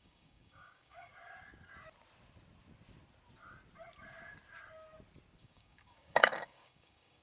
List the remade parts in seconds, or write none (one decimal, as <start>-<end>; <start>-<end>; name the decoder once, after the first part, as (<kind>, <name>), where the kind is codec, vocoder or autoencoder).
0.0-1.1 (codec, DAC); 5.4-7.2